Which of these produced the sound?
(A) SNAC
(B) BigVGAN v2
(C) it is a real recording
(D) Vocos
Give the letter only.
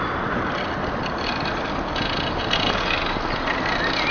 C